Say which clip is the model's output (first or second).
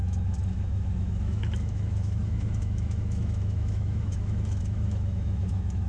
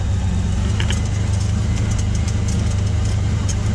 first